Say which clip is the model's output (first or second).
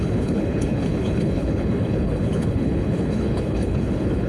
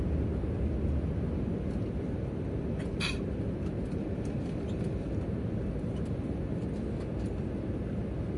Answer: first